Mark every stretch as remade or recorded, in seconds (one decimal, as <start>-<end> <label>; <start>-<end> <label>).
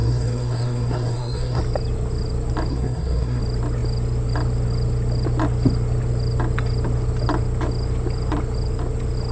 0.0-1.6 remade; 1.6-2.7 recorded; 2.7-3.4 remade; 3.4-9.3 recorded